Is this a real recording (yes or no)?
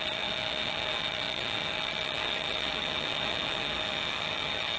no